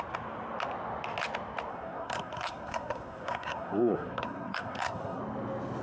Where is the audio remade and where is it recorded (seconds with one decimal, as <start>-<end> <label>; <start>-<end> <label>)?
0.0-1.7 recorded; 1.7-5.2 remade; 5.2-5.8 recorded